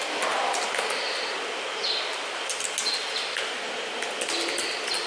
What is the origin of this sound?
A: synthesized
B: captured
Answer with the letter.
B